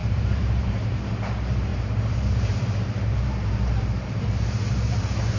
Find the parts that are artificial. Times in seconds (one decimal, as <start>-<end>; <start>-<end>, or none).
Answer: 0.0-5.4